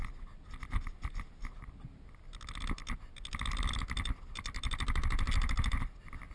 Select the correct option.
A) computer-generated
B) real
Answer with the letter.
B